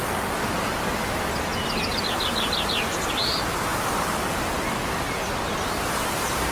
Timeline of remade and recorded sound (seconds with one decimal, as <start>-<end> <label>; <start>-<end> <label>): 0.0-0.9 remade; 0.9-6.5 recorded